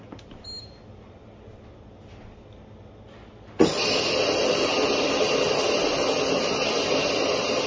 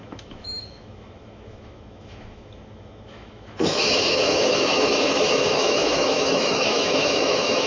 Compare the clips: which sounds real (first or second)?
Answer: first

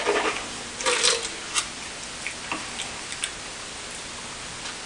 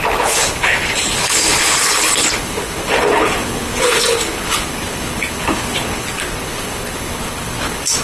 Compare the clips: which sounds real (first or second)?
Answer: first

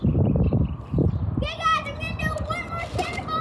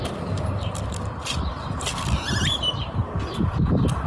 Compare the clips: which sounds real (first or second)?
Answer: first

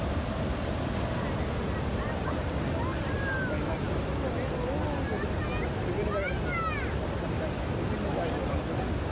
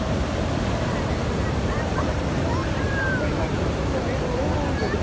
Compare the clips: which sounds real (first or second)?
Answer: first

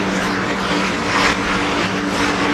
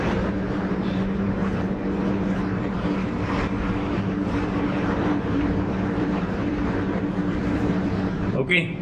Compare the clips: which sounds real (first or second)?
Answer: first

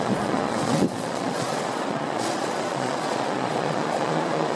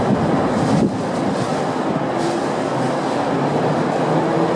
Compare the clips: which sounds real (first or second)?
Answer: second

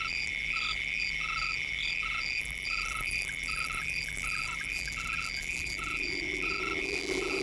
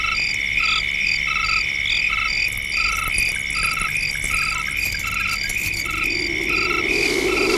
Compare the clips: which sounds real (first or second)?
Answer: second